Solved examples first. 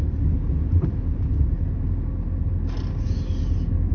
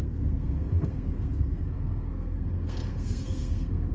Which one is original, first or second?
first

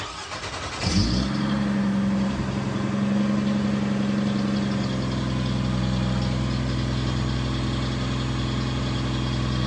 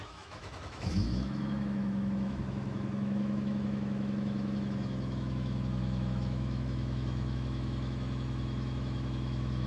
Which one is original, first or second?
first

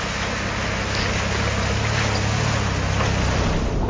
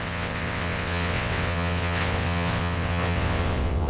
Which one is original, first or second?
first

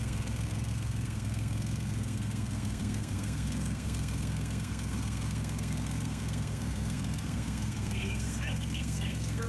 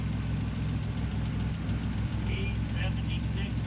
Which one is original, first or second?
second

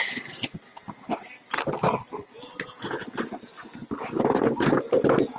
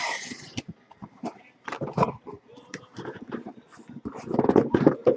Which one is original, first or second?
first